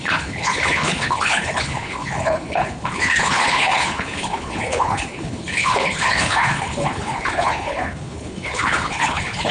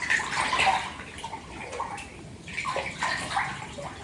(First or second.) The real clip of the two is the second